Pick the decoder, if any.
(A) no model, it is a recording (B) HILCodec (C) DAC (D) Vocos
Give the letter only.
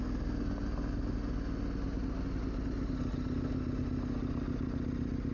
A